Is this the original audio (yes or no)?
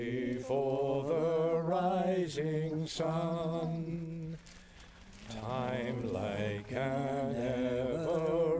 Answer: yes